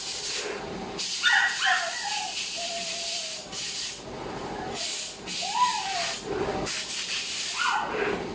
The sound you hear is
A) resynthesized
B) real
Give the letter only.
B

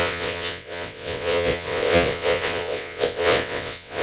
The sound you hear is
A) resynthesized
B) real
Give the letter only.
A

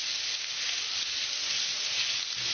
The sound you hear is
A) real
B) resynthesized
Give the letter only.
A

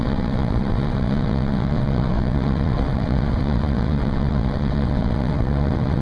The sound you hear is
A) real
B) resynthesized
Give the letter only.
B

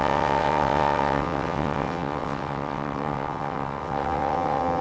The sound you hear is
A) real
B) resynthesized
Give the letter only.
B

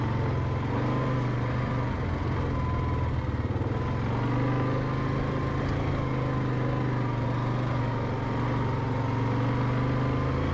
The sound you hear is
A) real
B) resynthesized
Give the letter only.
A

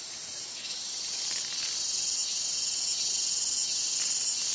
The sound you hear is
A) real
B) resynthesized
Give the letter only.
A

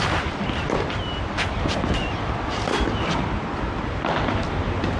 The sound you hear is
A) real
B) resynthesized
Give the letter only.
A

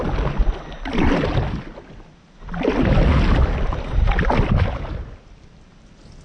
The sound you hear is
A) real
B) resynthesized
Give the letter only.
A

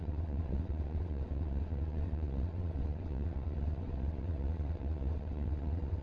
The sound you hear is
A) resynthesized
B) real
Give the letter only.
A